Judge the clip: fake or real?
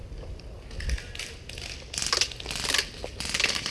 real